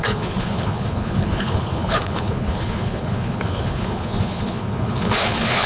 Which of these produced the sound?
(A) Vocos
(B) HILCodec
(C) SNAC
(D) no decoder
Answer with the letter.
B